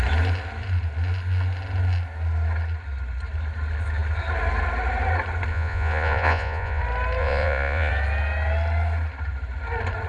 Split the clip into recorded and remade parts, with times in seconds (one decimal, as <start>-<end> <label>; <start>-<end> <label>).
0.0-5.5 recorded; 5.5-6.8 remade; 6.8-7.2 recorded; 7.2-7.9 remade; 7.9-10.1 recorded